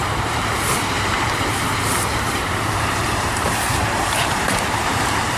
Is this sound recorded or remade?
remade